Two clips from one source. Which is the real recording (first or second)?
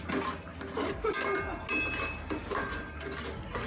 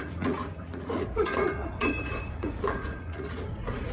first